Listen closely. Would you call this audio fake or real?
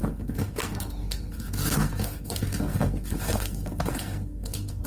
fake